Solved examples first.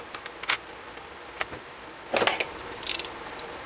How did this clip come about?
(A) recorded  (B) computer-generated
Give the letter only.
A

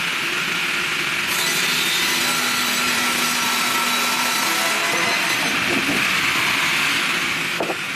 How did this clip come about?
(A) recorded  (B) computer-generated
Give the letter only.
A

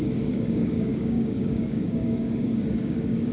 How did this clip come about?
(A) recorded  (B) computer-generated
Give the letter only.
B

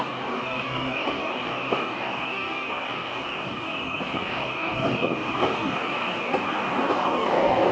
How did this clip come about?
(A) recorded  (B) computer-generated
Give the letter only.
B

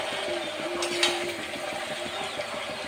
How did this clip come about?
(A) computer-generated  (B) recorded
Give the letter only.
B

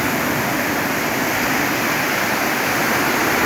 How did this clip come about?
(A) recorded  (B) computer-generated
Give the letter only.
A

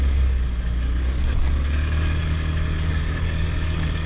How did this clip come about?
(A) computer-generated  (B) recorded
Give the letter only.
A